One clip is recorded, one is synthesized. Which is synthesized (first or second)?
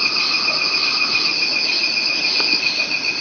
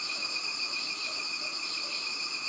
second